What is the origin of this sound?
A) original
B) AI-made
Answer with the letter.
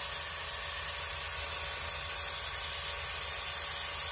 A